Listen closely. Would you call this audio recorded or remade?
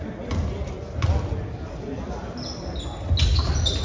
recorded